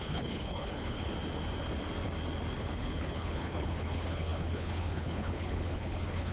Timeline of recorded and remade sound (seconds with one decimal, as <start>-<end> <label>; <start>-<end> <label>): 0.0-1.1 remade; 1.1-2.6 recorded; 2.6-6.3 remade